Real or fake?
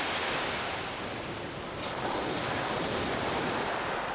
real